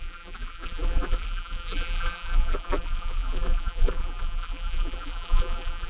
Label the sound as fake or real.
fake